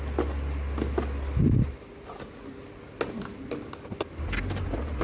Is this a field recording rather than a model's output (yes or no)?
yes